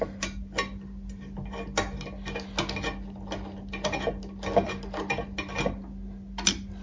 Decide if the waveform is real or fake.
real